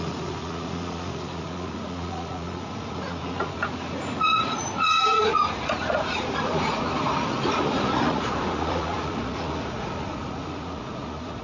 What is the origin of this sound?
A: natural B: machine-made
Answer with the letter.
B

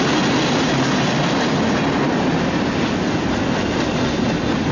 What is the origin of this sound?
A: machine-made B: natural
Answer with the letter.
B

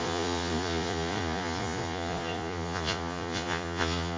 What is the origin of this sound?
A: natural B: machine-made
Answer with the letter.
B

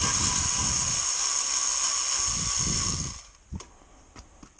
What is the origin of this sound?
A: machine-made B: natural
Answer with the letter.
B